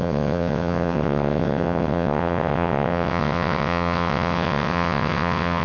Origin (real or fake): fake